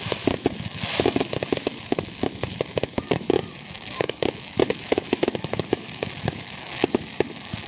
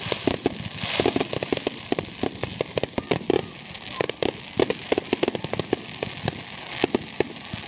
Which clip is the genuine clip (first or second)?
second